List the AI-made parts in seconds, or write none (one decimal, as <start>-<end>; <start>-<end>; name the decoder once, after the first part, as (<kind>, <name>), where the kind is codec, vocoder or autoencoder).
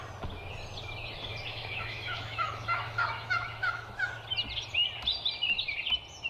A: 1.5-4.1 (autoencoder, DAC-VAE)